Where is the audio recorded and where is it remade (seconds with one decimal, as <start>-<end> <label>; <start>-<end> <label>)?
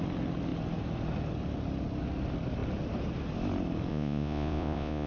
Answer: 0.0-3.9 recorded; 3.9-5.1 remade